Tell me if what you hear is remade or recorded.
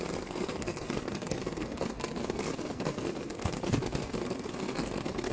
remade